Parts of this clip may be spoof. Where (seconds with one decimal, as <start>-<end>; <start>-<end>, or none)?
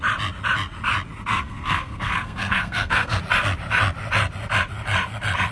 1.3-3.2